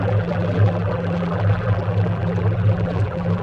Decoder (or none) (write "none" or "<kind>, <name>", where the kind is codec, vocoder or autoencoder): vocoder, BigVGAN v2